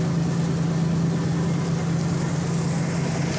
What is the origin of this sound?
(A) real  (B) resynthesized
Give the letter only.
A